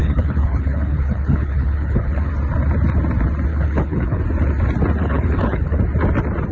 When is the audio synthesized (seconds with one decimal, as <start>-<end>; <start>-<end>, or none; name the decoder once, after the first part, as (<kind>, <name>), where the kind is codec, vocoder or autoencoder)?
0.0-2.3 (codec, HILCodec); 3.5-4.2; 5.0-5.8